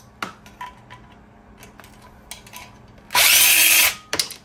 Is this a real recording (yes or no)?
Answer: yes